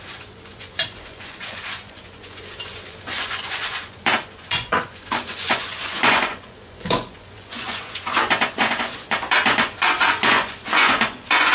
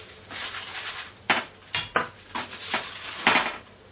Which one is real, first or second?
second